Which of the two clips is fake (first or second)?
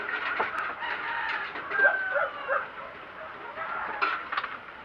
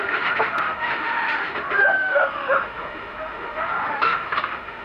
second